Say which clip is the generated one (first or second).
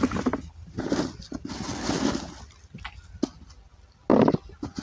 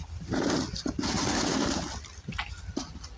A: second